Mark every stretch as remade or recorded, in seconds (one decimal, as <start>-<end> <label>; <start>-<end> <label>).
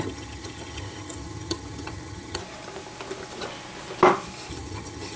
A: 0.0-2.4 remade; 2.4-4.5 recorded; 4.5-5.2 remade